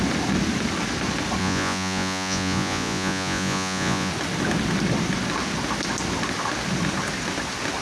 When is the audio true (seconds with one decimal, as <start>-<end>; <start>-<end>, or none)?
0.0-1.4; 4.1-7.8